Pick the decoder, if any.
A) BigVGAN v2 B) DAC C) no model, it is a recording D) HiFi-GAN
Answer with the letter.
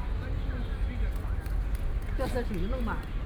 C